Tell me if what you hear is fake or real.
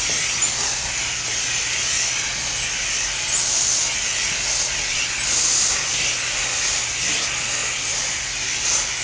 real